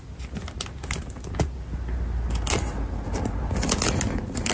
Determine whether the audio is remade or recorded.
recorded